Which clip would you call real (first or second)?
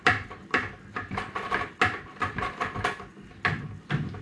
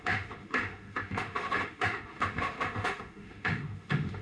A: first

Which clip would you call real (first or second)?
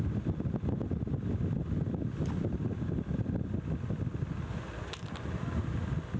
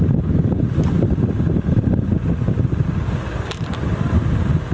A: first